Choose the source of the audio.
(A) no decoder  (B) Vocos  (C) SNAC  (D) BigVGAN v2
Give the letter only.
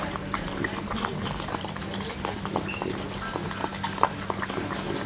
A